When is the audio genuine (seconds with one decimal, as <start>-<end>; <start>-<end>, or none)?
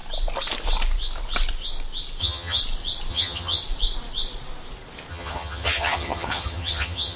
0.0-2.2; 2.6-3.1; 3.6-5.1